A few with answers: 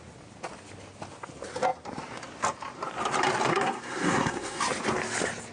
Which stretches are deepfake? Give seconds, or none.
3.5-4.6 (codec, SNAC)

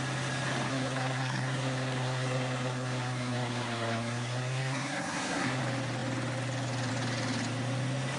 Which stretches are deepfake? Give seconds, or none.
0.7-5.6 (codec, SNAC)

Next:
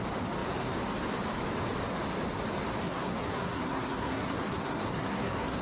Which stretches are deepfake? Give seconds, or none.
2.8-5.6 (codec, SNAC)